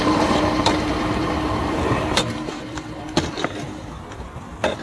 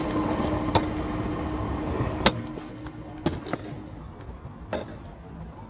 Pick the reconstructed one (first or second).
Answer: first